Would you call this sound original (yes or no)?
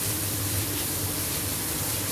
no